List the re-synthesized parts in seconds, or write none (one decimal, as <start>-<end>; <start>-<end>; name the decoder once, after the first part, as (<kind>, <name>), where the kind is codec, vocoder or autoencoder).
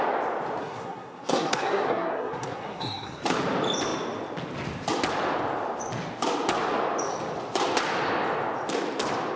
0.6-3.2 (codec, SNAC)